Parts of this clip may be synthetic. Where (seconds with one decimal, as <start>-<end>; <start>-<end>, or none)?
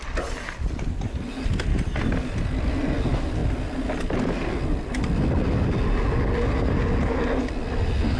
none